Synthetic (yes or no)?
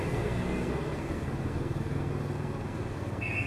yes